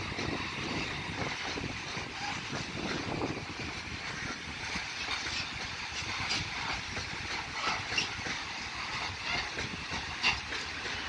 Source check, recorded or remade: recorded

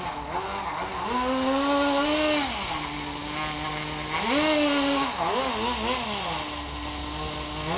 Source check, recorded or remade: recorded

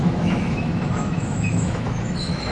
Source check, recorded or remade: remade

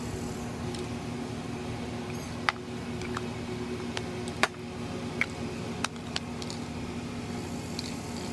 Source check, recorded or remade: recorded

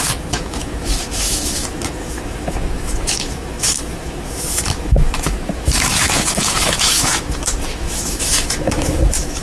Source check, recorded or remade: remade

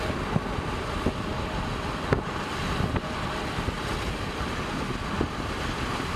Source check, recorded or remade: recorded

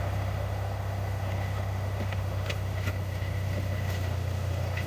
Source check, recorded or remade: remade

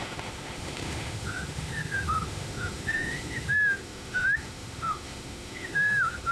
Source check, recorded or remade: remade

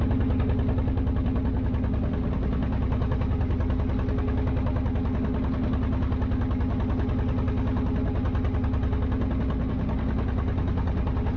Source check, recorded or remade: recorded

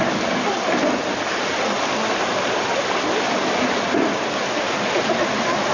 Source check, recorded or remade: recorded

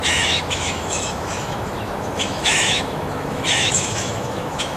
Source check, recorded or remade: remade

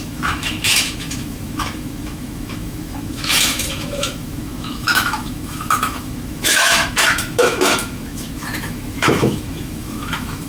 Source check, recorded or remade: remade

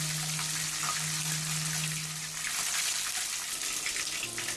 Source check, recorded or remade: recorded